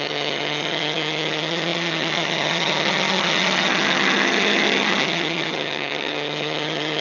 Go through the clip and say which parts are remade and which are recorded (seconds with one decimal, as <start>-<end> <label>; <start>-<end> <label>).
0.0-7.0 remade